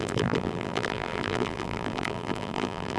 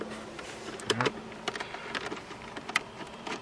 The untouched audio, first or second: second